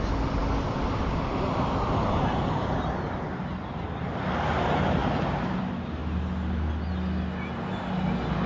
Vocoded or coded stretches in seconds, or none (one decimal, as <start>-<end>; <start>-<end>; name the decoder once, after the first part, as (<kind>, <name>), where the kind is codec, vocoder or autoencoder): 5.0-5.6 (vocoder, BigVGAN v2)